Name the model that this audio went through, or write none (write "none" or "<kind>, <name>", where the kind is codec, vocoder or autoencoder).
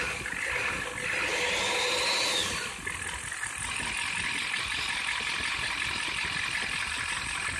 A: none